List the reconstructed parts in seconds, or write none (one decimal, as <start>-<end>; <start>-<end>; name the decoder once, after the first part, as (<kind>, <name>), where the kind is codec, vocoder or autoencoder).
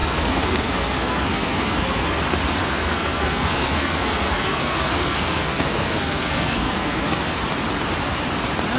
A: 0.0-2.2 (codec, SNAC); 2.6-7.4